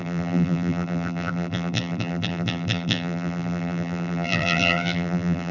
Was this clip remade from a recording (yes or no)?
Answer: yes